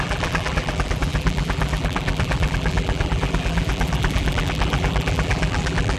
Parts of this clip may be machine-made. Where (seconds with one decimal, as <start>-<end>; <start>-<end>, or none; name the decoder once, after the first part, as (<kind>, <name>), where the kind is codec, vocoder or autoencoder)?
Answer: 0.0-6.0 (vocoder, BigVGAN v2)

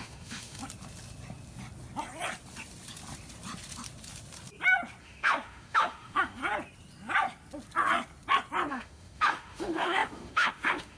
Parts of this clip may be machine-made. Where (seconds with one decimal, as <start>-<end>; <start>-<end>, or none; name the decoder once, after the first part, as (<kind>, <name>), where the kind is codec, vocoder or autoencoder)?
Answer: 0.0-0.6 (autoencoder, DAC-VAE); 5.0-6.4; 8.7-11.0

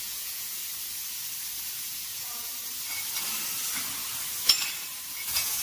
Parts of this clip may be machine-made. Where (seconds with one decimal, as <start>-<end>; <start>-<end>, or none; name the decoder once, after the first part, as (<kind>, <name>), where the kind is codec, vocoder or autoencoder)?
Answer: 0.0-0.6 (vocoder, Vocos); 1.6-2.5; 5.1-5.6

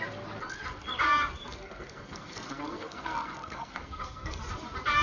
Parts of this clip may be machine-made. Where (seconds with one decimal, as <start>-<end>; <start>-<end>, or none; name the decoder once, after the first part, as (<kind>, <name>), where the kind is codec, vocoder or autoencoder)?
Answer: 1.4-4.4 (codec, SNAC)